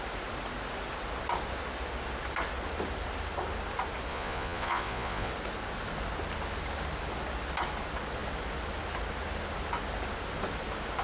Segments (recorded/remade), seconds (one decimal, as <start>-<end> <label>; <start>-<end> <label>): 0.0-4.1 recorded; 4.1-5.3 remade; 5.3-11.0 recorded